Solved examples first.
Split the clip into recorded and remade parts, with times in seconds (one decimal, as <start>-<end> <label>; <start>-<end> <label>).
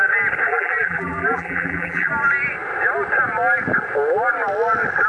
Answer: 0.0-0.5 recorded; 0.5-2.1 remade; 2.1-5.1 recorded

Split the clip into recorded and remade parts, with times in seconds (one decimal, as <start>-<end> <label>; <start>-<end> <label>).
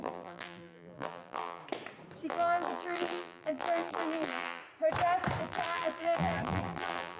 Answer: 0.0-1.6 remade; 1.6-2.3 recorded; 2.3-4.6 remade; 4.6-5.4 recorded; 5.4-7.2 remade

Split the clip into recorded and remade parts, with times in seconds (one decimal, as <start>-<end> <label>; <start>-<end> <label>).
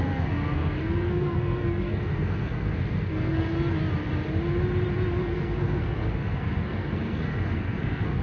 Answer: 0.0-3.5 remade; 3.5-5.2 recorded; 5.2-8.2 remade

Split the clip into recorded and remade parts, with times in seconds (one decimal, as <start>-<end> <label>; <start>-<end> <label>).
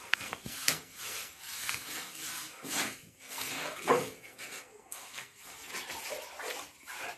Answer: 0.0-5.7 remade; 5.7-7.2 recorded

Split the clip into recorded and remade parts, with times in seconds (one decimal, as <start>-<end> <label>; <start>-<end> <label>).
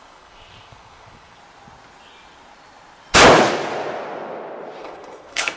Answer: 0.0-1.4 remade; 1.4-4.8 recorded; 4.8-5.6 remade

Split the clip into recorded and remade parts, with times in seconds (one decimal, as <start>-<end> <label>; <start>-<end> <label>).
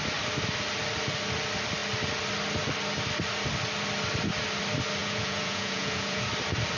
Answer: 0.0-5.0 recorded; 5.0-6.3 remade; 6.3-6.8 recorded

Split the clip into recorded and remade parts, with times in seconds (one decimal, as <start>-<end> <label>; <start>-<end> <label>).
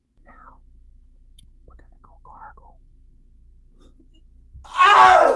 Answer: 0.0-3.1 remade; 3.1-5.4 recorded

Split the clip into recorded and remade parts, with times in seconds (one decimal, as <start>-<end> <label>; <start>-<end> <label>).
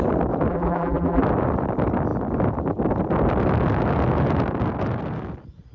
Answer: 0.0-0.5 recorded; 0.5-1.2 remade; 1.2-5.7 recorded